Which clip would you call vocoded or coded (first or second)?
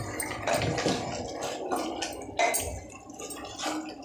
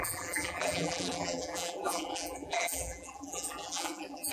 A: second